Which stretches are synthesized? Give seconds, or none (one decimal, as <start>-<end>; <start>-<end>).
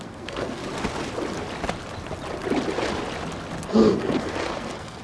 0.0-0.6; 3.6-5.0